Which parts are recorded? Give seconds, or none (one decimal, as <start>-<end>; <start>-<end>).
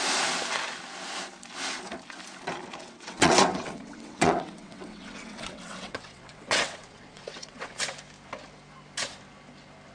0.0-2.8; 7.8-9.9